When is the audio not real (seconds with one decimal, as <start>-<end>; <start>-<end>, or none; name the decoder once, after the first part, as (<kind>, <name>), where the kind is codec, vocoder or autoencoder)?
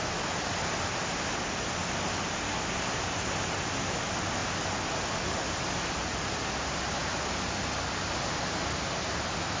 none